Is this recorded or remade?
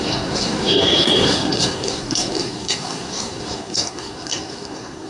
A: remade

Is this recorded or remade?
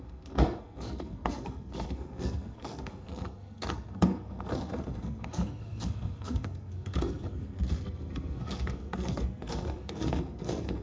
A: remade